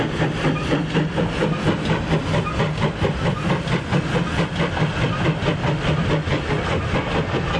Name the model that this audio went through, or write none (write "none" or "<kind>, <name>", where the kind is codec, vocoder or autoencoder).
none